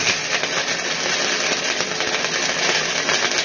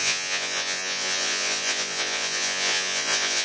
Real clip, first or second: first